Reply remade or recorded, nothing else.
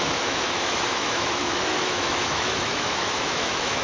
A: remade